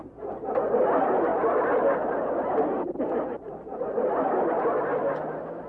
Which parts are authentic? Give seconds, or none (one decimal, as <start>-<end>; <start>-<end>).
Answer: 0.0-1.3; 4.7-5.7